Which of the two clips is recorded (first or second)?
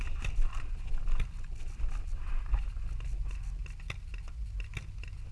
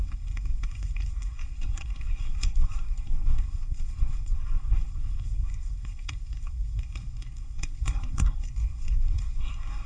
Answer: first